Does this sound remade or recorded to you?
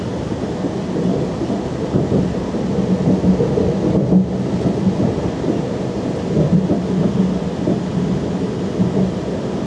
recorded